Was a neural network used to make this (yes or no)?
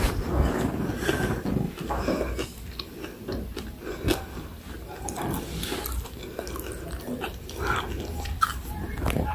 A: no